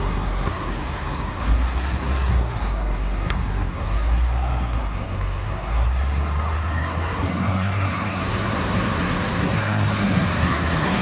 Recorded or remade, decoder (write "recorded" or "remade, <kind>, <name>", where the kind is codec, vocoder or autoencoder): remade, codec, SNAC